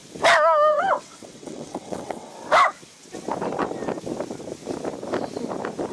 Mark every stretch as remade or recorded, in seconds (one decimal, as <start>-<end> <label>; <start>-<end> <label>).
0.0-0.7 recorded; 0.7-2.3 remade; 2.3-5.9 recorded